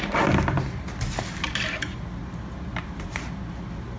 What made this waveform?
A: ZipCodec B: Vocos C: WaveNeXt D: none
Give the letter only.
D